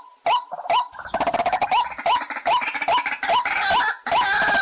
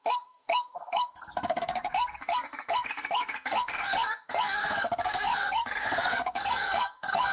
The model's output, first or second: second